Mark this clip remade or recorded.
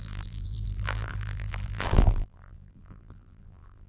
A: remade